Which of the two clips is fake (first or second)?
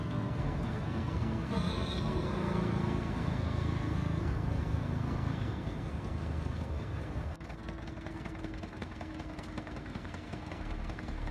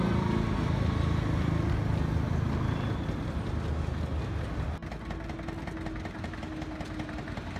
first